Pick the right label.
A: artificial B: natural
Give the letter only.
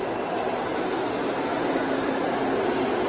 B